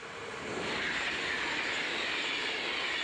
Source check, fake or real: real